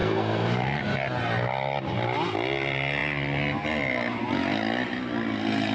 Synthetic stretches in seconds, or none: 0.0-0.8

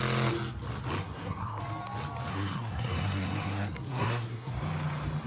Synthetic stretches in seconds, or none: 1.0-1.6; 2.3-4.5

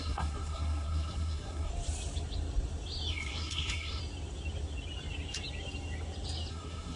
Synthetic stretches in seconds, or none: 0.0-1.7; 3.1-4.0; 6.5-7.0